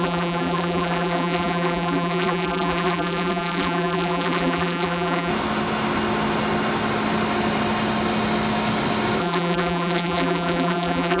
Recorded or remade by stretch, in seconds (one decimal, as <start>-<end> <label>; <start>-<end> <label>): 0.0-5.3 remade; 5.3-9.2 recorded; 9.2-11.2 remade